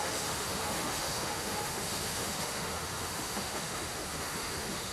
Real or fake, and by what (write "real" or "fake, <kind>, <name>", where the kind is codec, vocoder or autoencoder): fake, autoencoder, DAC-VAE